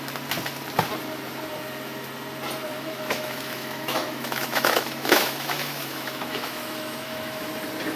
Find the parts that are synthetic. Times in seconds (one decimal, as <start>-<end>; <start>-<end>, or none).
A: 2.7-7.5